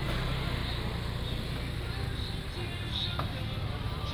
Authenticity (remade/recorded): recorded